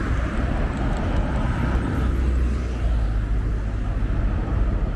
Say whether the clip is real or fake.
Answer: real